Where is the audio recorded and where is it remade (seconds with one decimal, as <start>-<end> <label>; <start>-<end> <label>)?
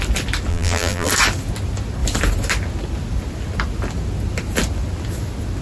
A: 0.0-0.5 recorded; 0.5-1.1 remade; 1.1-5.6 recorded